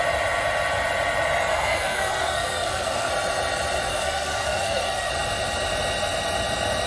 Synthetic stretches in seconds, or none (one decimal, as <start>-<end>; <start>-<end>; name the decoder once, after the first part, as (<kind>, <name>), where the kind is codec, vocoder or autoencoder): 1.5-3.1 (codec, SNAC); 3.9-5.1